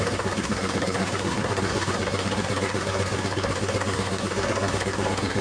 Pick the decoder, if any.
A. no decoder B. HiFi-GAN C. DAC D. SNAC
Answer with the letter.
D